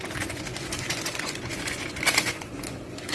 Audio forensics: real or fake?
fake